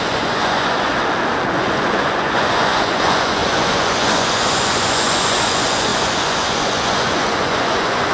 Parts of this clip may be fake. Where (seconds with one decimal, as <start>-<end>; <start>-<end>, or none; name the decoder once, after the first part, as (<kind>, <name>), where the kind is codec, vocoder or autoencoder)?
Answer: 0.0-0.9 (vocoder, Vocos); 1.5-8.1